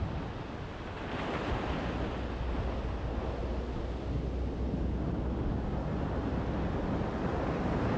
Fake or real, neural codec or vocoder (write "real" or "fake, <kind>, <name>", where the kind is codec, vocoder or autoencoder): real